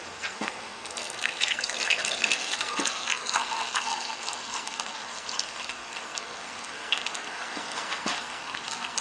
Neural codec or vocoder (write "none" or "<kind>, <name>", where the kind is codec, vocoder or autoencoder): codec, SNAC